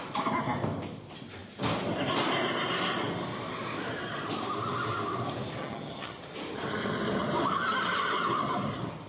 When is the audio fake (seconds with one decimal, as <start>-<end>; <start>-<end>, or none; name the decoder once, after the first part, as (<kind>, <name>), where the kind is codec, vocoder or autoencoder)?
5.6-6.2 (vocoder, HiFi-GAN)